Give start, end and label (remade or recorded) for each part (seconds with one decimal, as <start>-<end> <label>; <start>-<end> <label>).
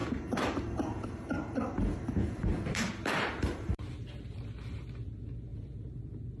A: 0.0-3.8 remade; 3.8-5.5 recorded; 5.5-6.0 remade; 6.0-6.4 recorded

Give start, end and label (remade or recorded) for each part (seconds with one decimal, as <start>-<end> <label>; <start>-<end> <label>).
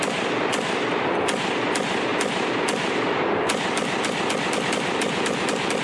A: 0.0-5.8 recorded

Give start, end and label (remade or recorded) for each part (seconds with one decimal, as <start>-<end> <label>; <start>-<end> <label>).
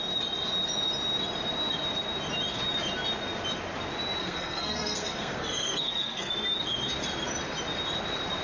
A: 0.0-4.2 recorded; 4.2-6.3 remade; 6.3-8.4 recorded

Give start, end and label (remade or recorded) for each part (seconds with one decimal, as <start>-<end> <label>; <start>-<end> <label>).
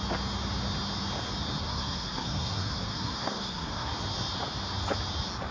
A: 0.0-1.6 recorded; 1.6-3.9 remade; 3.9-5.5 recorded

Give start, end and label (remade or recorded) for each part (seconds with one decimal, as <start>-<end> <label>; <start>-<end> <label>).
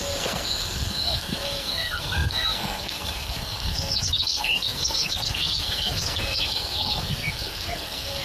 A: 0.0-8.2 remade